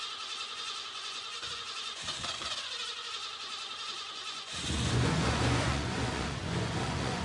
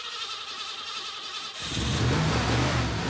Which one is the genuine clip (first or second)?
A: second